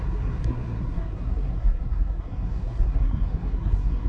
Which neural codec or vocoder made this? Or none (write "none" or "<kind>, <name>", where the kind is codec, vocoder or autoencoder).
codec, SNAC